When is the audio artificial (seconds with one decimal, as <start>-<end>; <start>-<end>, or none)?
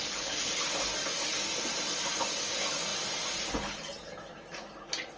none